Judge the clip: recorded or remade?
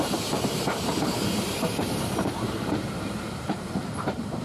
remade